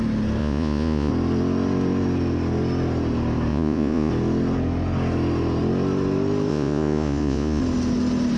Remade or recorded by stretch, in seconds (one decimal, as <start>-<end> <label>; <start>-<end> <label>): 0.0-0.4 recorded; 0.4-1.1 remade; 1.1-3.5 recorded; 3.5-4.1 remade; 4.1-6.5 recorded; 6.5-7.6 remade; 7.6-8.4 recorded